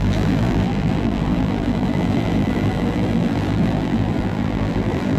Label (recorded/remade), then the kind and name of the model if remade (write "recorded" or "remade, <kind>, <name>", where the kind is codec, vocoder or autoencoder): remade, vocoder, BigVGAN v2